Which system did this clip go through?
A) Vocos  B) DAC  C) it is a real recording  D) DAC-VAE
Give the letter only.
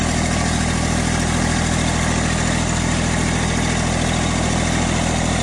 C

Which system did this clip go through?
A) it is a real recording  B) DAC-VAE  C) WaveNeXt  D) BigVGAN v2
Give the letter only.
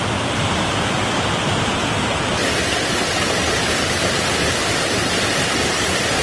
A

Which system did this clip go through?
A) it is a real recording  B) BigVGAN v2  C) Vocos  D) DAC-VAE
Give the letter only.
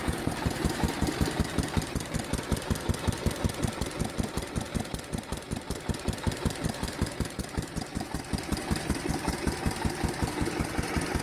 A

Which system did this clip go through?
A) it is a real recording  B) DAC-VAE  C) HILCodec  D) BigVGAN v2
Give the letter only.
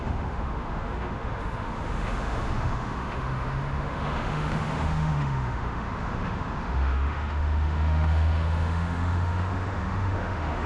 B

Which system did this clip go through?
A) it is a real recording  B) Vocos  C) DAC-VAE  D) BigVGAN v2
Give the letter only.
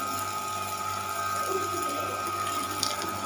A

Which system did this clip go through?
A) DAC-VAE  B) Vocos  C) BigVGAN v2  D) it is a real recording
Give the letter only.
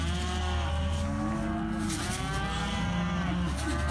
D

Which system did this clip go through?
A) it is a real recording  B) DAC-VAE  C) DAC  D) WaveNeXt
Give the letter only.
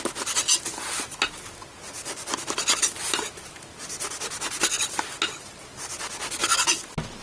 A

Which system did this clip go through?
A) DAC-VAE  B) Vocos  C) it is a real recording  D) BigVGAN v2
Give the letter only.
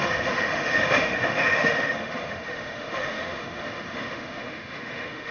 A